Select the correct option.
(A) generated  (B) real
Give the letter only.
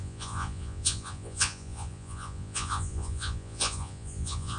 A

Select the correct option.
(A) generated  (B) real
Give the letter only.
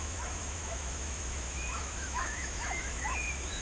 A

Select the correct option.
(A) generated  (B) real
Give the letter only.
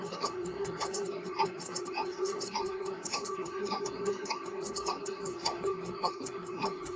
A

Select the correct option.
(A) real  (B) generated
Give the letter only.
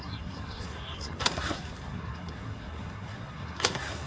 B